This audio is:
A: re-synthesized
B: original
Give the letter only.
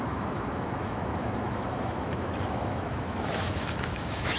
A